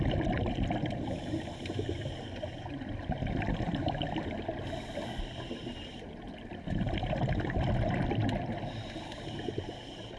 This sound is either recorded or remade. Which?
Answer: recorded